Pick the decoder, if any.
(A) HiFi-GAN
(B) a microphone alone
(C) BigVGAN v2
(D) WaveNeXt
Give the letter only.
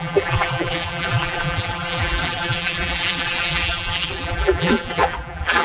C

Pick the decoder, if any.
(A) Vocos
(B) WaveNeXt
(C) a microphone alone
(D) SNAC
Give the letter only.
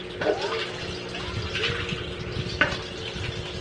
C